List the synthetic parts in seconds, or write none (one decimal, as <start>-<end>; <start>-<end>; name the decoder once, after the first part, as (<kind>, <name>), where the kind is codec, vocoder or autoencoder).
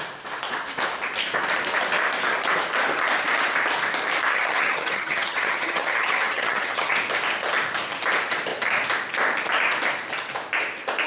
4.3-6.9 (vocoder, HiFi-GAN)